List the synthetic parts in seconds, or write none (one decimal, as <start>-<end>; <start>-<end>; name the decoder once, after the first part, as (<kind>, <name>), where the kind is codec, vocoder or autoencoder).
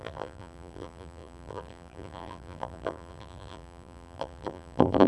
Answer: 0.0-5.1 (vocoder, BigVGAN v2)